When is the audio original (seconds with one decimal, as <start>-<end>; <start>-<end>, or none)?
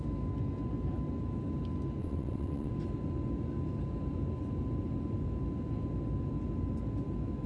0.0-2.0; 2.7-7.5